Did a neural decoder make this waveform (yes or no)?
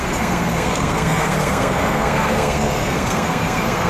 yes